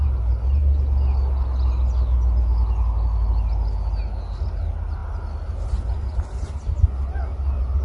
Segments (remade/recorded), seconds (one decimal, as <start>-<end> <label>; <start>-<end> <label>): 0.0-7.8 recorded